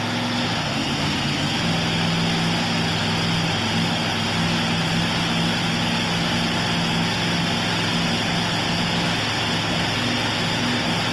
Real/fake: real